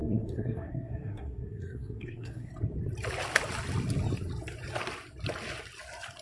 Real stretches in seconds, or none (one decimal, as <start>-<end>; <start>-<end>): 2.5-6.2